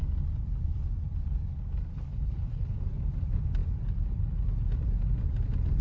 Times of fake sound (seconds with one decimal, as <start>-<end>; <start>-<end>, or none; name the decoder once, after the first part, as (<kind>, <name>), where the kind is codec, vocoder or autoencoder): 1.9-2.8 (codec, HILCodec)